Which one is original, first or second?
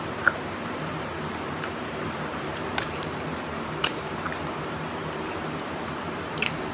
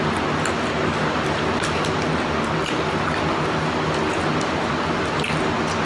second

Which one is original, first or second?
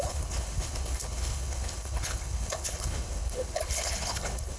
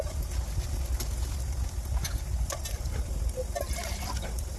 second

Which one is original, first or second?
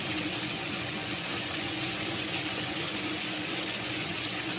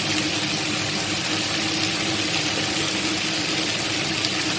second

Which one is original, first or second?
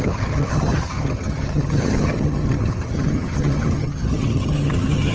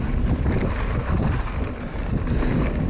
second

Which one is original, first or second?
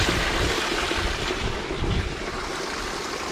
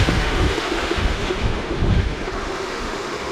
first